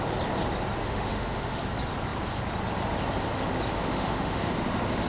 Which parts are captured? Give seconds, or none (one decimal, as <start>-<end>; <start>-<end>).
0.0-0.8; 1.6-3.7; 4.5-5.1